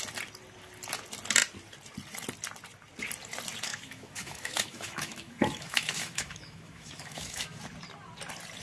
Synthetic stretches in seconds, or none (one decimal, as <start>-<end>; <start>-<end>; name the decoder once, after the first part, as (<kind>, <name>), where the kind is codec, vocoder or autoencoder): 3.7-7.6 (autoencoder, DAC-VAE)